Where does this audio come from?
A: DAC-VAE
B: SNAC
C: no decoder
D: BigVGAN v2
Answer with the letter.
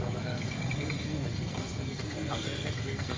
B